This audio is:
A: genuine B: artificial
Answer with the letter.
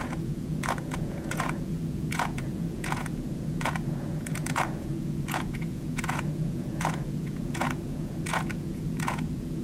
B